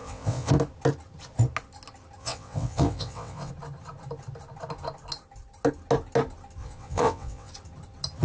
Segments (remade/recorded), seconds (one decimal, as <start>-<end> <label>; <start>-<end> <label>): 0.0-0.5 remade; 0.5-2.2 recorded; 2.2-3.5 remade; 3.5-6.6 recorded; 6.6-7.5 remade; 7.5-8.2 recorded